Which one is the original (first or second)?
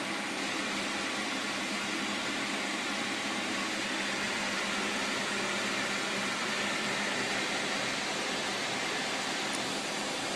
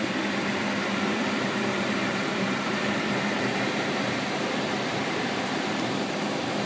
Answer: first